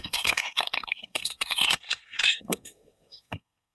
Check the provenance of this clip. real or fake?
fake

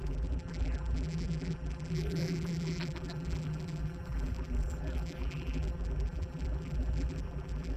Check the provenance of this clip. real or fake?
fake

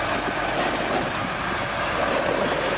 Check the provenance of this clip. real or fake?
real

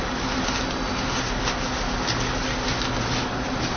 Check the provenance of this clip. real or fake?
real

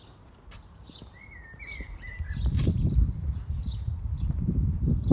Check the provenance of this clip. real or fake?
fake